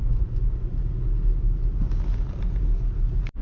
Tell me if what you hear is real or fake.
real